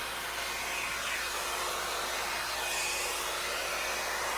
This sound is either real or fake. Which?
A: real